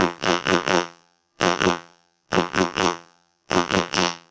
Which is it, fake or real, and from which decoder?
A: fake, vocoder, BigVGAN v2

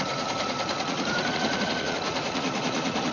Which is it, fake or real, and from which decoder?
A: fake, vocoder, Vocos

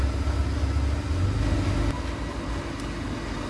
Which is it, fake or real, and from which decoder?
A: real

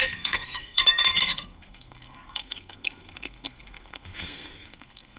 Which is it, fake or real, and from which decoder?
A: fake, codec, SNAC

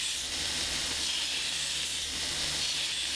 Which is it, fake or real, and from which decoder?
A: real